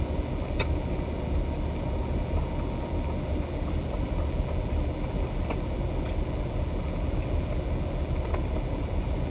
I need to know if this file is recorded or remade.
recorded